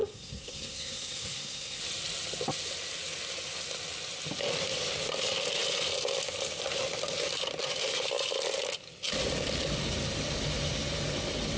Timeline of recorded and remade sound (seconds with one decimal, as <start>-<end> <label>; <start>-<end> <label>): 0.0-1.8 remade; 1.8-11.6 recorded